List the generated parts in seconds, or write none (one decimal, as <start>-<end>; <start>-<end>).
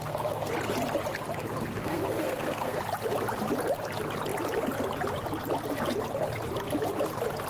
0.0-0.5; 1.8-2.8